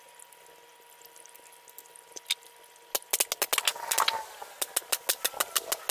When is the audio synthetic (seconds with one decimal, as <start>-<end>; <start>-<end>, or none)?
none